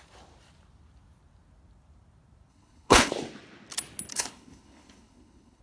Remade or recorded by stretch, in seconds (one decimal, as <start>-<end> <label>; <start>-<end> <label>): 0.0-2.5 recorded; 2.5-3.1 remade; 3.1-4.1 recorded; 4.1-5.6 remade